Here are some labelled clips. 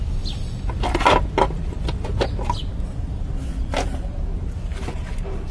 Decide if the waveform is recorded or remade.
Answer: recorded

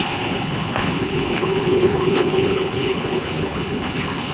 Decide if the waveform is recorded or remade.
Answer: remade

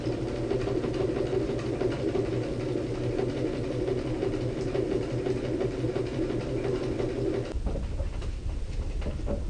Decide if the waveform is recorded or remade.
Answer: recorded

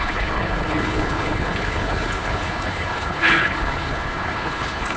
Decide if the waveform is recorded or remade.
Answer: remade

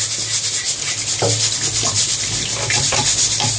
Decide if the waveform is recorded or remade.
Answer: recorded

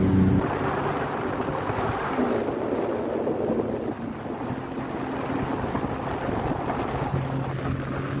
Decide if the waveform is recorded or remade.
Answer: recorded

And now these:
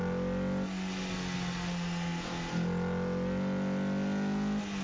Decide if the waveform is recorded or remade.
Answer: recorded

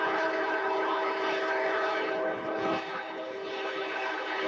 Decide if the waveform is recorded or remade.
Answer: remade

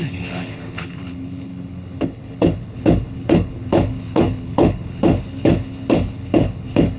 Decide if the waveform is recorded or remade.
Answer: remade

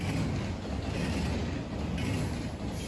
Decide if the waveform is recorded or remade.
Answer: recorded